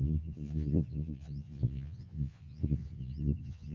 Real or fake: fake